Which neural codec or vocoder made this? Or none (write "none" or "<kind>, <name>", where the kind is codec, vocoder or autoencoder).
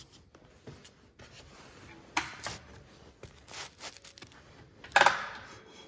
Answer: none